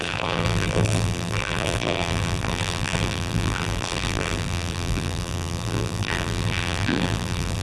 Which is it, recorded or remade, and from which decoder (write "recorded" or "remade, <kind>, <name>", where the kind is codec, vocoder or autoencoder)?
remade, vocoder, BigVGAN v2